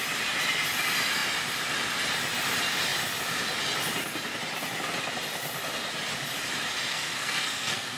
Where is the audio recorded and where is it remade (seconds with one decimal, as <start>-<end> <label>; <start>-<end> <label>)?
0.0-6.9 recorded; 6.9-8.0 remade